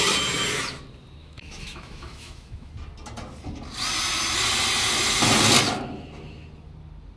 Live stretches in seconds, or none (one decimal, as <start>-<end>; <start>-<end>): 0.0-1.2; 2.7-7.2